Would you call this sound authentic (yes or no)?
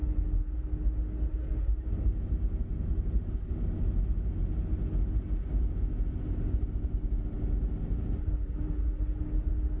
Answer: yes